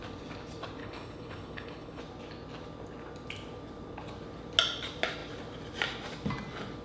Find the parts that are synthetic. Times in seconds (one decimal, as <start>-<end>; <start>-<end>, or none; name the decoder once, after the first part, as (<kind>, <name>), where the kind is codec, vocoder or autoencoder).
0.8-2.0 (codec, HILCodec)